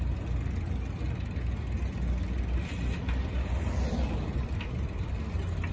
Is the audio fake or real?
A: real